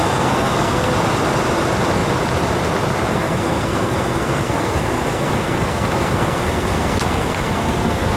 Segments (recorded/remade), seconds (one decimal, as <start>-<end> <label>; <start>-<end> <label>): 0.0-0.9 remade; 0.9-3.1 recorded; 3.1-8.2 remade